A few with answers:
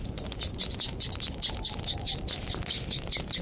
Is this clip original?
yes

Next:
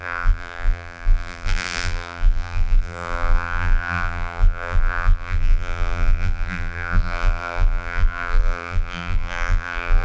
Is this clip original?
no